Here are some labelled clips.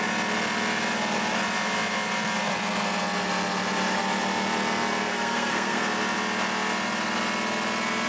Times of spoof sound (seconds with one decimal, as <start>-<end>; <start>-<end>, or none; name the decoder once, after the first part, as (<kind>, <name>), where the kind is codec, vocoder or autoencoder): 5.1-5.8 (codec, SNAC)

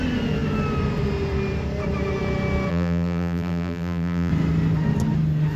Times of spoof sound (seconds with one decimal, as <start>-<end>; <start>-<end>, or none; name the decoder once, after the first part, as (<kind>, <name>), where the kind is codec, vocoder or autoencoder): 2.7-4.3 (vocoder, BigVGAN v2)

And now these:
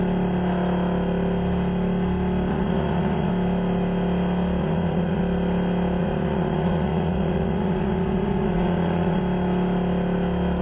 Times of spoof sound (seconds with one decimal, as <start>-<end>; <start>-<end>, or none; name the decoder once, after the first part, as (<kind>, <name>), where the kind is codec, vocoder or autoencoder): 2.5-3.3 (vocoder, Vocos); 4.6-5.2; 6.0-9.2

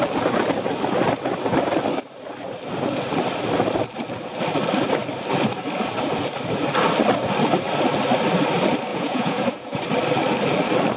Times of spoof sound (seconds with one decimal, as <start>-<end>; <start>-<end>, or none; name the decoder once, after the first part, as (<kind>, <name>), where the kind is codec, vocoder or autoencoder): 8.9-9.8 (vocoder, Vocos)

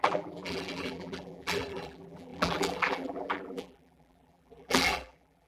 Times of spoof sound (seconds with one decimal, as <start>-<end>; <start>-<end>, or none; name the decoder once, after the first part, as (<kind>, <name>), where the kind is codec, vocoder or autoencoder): 0.0-5.5 (vocoder, BigVGAN v2)

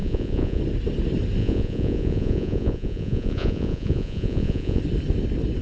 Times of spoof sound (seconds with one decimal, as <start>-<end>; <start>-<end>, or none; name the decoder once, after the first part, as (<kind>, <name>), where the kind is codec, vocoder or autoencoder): 0.0-0.6 (vocoder, Vocos); 1.4-4.8